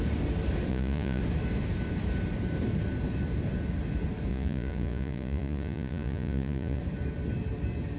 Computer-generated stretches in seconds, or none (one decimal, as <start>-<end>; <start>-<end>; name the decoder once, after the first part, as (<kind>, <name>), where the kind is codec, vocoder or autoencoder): 0.7-1.2 (vocoder, Vocos); 4.3-6.8